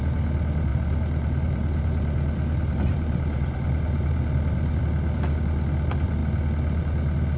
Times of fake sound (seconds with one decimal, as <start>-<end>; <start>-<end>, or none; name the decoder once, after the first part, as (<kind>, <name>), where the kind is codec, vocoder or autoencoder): 0.7-4.8 (vocoder, BigVGAN v2)